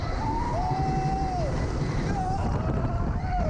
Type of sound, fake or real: real